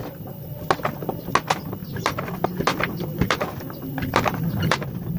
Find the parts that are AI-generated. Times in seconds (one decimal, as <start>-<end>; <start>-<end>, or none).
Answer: 1.8-3.6; 4.3-5.2